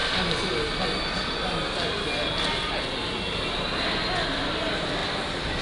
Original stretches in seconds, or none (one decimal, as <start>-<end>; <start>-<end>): 0.0-5.6